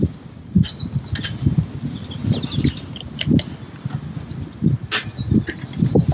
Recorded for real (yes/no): yes